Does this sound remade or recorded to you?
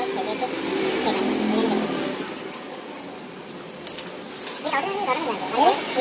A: recorded